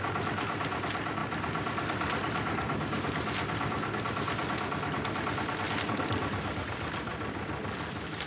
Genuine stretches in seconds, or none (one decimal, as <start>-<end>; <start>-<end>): 0.0-8.3